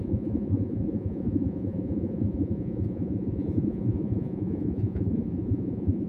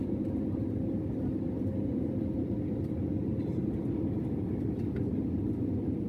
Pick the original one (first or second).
second